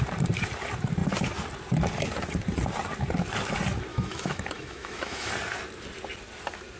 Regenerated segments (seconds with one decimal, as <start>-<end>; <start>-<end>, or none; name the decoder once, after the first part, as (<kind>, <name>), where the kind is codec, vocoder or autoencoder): 3.9-5.3 (autoencoder, DAC-VAE)